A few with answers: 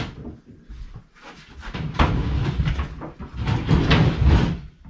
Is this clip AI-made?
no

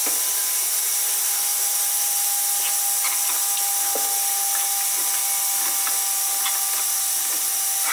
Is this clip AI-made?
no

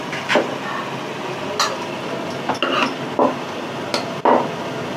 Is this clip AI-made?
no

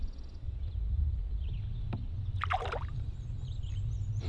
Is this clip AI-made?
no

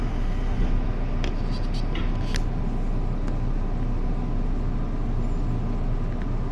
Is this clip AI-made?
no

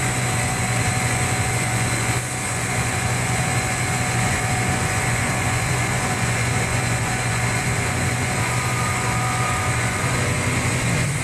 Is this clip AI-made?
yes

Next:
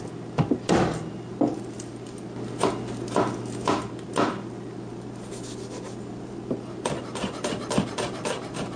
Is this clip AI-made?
no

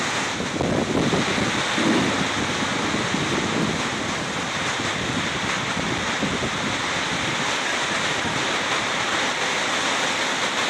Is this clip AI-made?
no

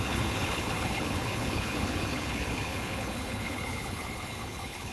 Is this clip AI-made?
yes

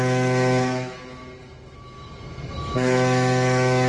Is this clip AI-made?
yes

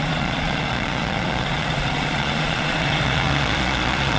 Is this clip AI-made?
yes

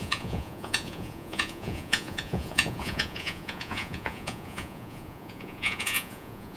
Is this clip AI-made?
yes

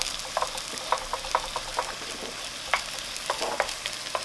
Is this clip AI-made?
no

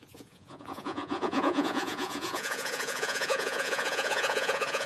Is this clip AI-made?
yes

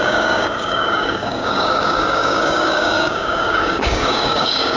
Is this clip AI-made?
yes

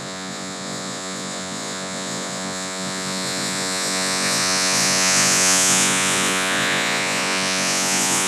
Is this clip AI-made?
yes